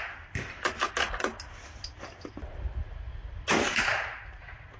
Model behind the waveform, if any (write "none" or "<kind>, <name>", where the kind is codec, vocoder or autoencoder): none